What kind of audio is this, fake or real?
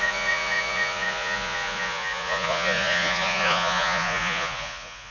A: fake